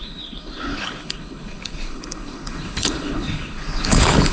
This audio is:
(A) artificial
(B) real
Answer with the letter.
A